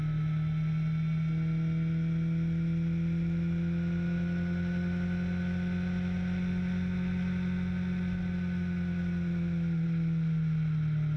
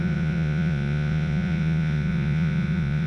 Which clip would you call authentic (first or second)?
first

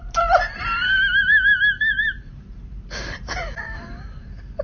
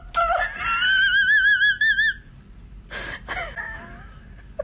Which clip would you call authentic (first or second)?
second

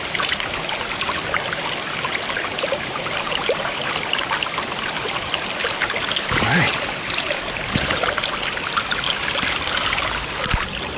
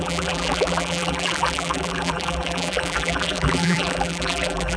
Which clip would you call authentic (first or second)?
first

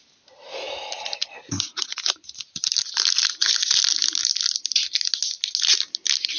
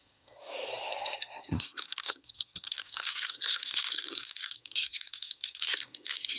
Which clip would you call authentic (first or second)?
first